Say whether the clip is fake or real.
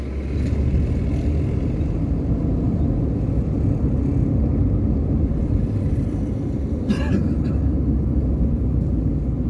real